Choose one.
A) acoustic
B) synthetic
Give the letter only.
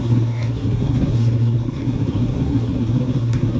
B